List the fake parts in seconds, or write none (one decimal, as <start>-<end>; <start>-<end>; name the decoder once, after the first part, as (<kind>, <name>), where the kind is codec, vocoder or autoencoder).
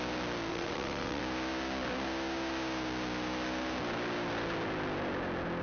0.5-1.2 (vocoder, WaveNeXt)